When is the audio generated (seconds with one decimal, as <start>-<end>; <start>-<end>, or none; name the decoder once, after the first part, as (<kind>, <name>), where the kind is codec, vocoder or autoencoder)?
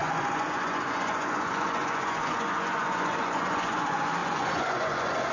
0.0-5.3 (vocoder, Vocos)